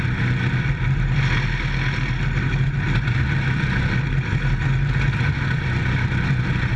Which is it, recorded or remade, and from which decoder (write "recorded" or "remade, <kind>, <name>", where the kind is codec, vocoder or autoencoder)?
recorded